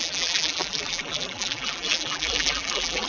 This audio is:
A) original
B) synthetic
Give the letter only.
B